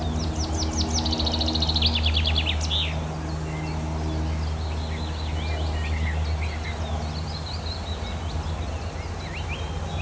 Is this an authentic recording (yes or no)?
yes